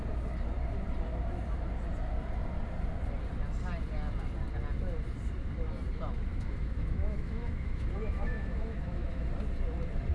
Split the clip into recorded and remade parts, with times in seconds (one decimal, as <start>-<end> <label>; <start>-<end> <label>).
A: 0.0-6.3 recorded; 6.3-9.3 remade; 9.3-10.1 recorded